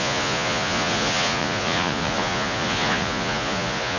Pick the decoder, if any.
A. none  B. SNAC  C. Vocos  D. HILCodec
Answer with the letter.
C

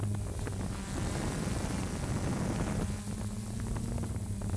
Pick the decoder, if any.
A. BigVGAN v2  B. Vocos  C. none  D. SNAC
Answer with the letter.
C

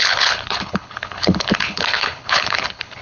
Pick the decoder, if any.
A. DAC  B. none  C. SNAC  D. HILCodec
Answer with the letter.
D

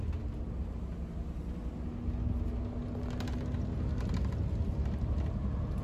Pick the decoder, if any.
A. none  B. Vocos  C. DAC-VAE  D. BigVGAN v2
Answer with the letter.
A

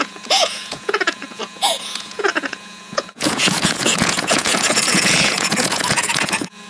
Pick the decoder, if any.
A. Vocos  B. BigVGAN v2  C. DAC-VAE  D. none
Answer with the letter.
A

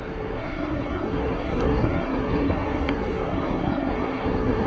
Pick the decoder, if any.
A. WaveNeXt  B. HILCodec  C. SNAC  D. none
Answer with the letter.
C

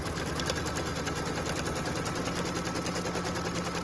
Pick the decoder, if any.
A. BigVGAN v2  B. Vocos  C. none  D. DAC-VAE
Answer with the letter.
C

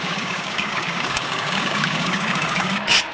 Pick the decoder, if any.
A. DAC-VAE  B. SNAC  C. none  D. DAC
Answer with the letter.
D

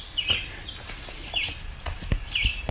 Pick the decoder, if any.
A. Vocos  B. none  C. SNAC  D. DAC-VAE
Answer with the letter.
B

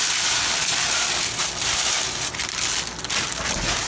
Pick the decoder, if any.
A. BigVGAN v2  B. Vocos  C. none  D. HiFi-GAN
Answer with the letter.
C